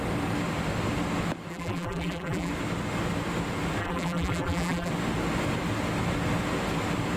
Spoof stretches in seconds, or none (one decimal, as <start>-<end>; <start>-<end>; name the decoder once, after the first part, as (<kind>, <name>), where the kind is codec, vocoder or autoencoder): 1.5-2.5 (vocoder, BigVGAN v2); 3.8-4.9